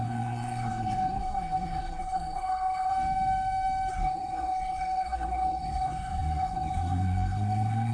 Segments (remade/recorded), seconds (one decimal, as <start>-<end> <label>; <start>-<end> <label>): 0.0-2.9 remade; 2.9-3.9 recorded; 3.9-7.9 remade